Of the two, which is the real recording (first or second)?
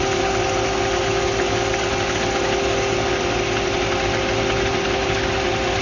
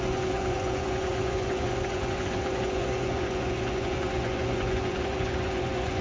first